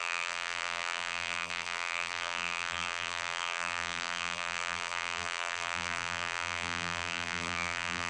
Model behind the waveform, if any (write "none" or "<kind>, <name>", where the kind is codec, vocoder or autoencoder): vocoder, BigVGAN v2